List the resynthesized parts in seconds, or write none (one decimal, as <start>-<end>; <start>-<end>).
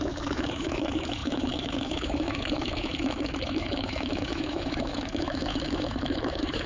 0.0-6.7